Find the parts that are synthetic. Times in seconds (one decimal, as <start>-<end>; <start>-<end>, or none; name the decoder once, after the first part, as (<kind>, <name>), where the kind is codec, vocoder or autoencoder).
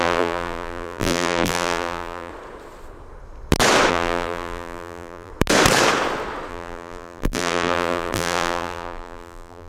0.0-2.3 (vocoder, BigVGAN v2); 3.9-5.3; 6.5-9.7